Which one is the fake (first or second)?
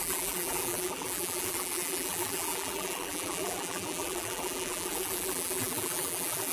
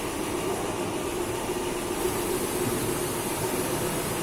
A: first